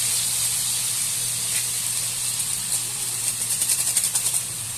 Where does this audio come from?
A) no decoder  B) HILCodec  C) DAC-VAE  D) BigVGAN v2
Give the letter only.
D